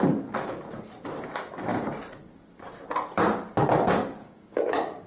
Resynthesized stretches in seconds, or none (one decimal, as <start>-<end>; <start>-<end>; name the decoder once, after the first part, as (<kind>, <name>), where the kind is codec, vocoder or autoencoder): 4.2-5.1 (codec, DAC)

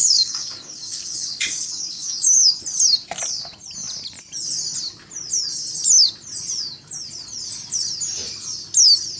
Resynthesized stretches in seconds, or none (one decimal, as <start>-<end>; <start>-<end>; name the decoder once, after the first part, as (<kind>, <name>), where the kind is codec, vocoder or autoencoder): 0.0-2.5 (codec, DAC)